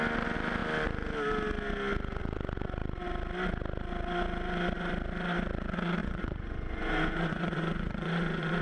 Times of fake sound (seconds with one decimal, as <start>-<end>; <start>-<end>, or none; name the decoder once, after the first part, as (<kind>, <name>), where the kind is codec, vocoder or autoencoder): 6.0-8.6 (vocoder, Vocos)